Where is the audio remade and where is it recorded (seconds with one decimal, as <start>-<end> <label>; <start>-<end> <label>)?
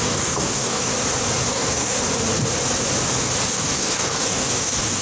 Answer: 0.0-0.9 remade; 0.9-1.5 recorded; 1.5-2.0 remade; 2.0-3.5 recorded; 3.5-5.0 remade